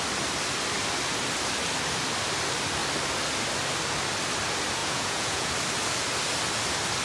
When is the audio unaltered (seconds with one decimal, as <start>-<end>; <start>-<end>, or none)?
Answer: 0.0-4.8; 5.5-7.0